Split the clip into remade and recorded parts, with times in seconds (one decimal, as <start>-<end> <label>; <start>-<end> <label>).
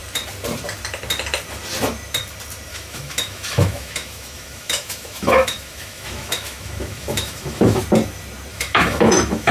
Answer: 0.0-2.7 recorded; 2.7-7.8 remade; 7.8-8.5 recorded; 8.5-9.5 remade